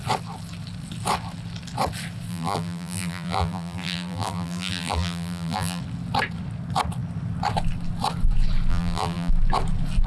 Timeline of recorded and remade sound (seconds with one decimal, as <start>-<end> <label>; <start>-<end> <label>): 0.0-2.3 recorded; 2.3-5.8 remade; 5.8-8.7 recorded; 8.7-9.3 remade; 9.3-10.1 recorded